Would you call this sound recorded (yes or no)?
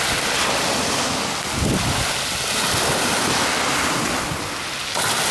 yes